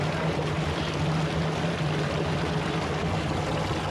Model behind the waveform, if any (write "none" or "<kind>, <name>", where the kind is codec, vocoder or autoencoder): none